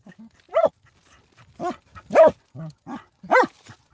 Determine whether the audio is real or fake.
real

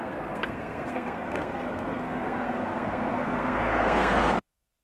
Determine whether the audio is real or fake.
fake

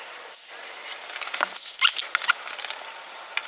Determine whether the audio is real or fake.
real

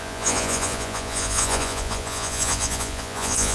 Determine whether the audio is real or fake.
fake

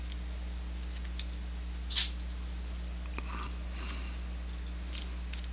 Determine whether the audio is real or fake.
real